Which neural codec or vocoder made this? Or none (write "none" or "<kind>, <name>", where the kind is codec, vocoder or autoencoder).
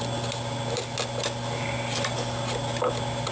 none